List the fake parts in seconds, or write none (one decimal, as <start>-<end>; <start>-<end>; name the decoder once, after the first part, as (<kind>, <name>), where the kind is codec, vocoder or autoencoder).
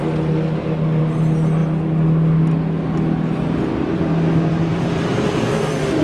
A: 4.7-5.3 (vocoder, BigVGAN v2)